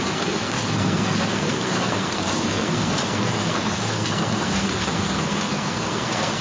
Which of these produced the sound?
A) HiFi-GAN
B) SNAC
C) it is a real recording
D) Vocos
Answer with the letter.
B